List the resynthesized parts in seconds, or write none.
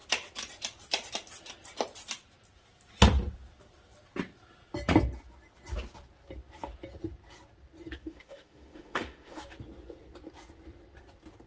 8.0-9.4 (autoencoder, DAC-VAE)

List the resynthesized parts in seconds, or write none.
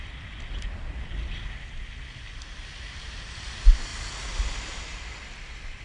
none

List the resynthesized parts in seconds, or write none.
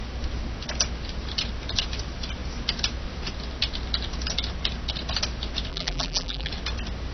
5.7-6.5 (vocoder, BigVGAN v2)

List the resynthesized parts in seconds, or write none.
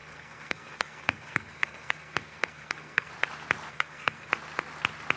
0.0-3.1 (codec, SNAC); 3.7-4.3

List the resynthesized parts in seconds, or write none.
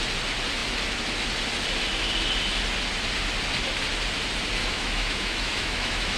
4.6-6.2 (autoencoder, DAC-VAE)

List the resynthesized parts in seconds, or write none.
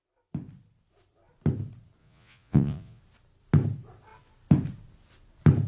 2.0-3.0 (vocoder, Vocos)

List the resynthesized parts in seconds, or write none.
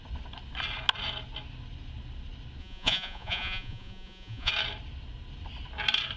2.6-4.5 (vocoder, Vocos)